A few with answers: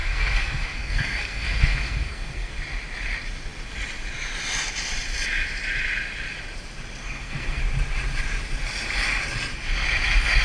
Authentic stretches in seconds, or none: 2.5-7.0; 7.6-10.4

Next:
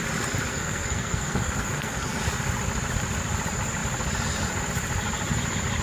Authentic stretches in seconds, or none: 0.0-0.5; 2.2-5.8